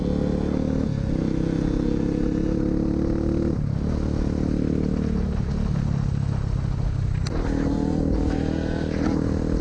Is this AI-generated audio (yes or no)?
no